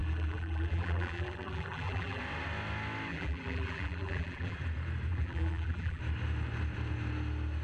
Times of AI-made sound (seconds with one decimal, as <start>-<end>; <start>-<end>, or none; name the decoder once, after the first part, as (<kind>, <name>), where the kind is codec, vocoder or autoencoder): 0.0-2.2 (vocoder, BigVGAN v2); 3.1-4.6; 5.1-6.0